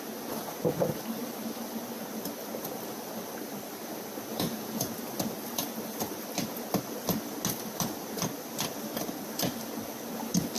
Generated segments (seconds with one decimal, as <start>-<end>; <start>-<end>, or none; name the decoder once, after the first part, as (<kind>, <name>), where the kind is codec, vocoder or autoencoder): 4.3-4.9 (vocoder, Vocos)